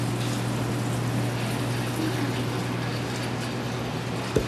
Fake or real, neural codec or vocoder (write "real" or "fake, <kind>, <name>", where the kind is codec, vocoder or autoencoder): real